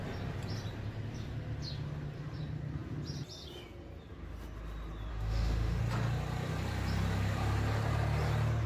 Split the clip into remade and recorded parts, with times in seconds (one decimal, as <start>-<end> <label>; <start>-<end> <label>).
0.0-5.1 recorded; 5.1-5.8 remade; 5.8-8.7 recorded